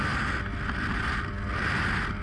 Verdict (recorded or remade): recorded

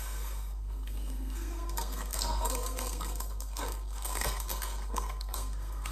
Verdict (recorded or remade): remade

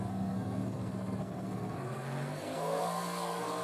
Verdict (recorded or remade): remade